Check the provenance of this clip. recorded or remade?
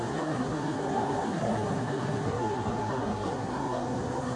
remade